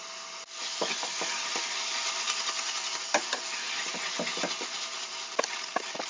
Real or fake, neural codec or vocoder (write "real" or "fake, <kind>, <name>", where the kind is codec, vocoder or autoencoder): real